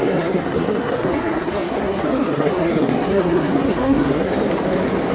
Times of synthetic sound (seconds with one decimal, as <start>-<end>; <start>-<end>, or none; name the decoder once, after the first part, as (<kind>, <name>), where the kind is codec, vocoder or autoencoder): 0.0-4.3 (codec, SNAC)